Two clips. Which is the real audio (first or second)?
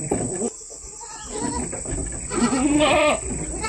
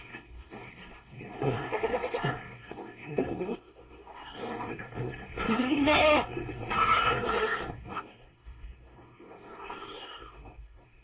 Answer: first